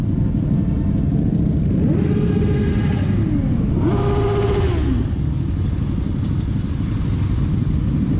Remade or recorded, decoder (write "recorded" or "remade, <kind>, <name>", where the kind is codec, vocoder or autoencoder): recorded